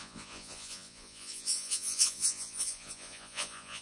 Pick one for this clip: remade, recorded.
remade